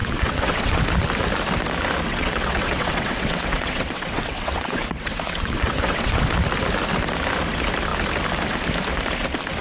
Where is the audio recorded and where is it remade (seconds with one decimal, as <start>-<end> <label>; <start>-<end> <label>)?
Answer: 0.0-0.8 remade; 0.8-2.1 recorded; 2.1-6.2 remade; 6.2-9.6 recorded